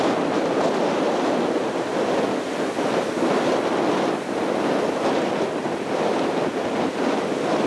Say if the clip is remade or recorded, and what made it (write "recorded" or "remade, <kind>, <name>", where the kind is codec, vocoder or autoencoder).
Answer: recorded